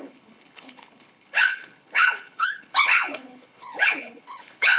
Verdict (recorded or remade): remade